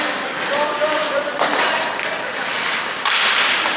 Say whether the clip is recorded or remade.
remade